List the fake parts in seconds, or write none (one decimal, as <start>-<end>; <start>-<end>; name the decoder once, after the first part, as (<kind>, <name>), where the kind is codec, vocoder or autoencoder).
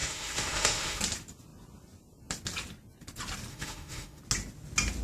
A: 0.0-1.0 (autoencoder, DAC-VAE); 3.5-4.2